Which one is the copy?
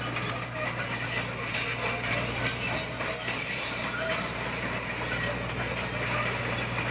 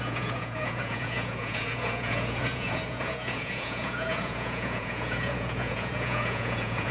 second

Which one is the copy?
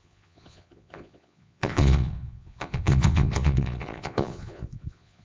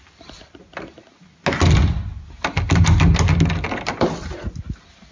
first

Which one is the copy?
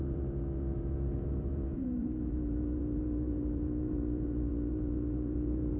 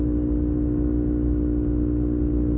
first